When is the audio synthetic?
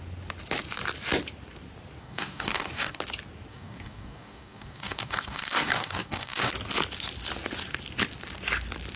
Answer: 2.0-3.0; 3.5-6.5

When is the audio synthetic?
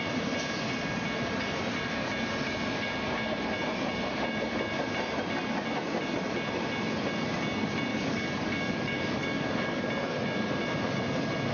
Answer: 7.9-9.8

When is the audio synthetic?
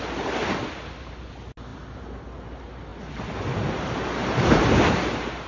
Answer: none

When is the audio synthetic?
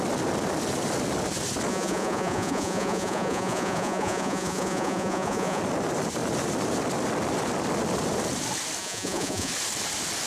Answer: 1.7-5.6; 8.8-9.5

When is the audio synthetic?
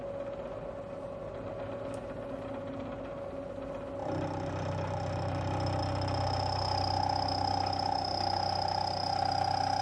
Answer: none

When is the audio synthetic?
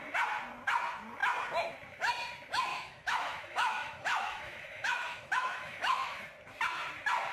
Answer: 2.7-6.2